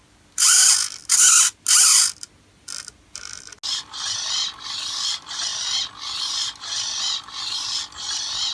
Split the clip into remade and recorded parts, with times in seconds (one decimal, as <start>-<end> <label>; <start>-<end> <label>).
0.0-0.5 remade; 0.5-3.8 recorded; 3.8-5.5 remade; 5.5-6.3 recorded; 6.3-8.5 remade